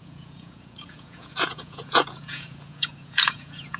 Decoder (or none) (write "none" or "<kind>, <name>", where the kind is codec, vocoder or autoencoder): vocoder, Vocos